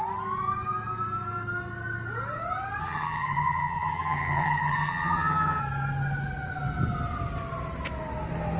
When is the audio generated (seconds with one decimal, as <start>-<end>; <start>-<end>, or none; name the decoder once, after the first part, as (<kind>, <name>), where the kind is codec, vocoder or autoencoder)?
2.8-5.6 (vocoder, HiFi-GAN)